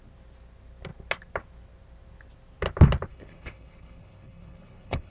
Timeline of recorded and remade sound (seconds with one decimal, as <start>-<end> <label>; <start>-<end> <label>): 0.0-3.1 recorded; 3.1-5.1 remade